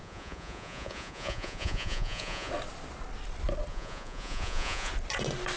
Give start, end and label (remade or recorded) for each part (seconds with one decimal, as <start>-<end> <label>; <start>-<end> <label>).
0.0-2.5 remade; 2.5-3.7 recorded; 3.7-4.9 remade; 4.9-5.6 recorded